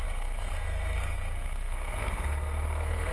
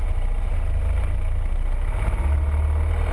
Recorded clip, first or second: second